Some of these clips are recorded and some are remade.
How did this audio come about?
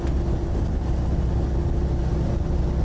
recorded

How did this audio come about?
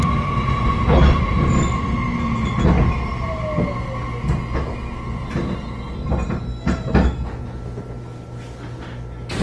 recorded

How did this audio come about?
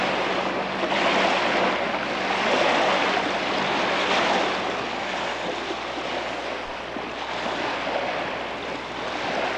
recorded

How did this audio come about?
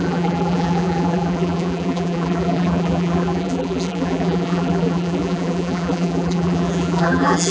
remade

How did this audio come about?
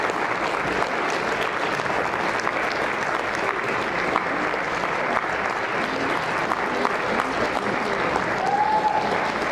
recorded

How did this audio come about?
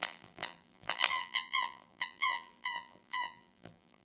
remade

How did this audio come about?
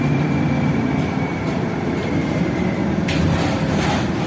remade